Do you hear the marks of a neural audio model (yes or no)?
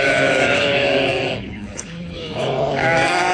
yes